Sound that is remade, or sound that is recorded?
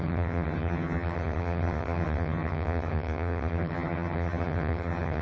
remade